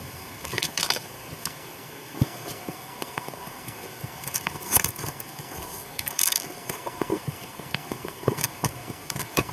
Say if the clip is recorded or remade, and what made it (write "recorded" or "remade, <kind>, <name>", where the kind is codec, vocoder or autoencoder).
remade, codec, SNAC